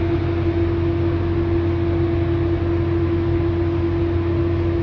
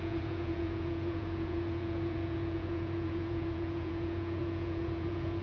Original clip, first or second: first